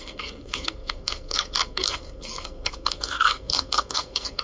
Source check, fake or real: fake